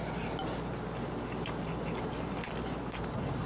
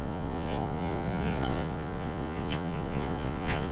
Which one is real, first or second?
first